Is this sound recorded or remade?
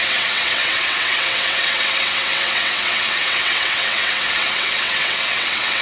remade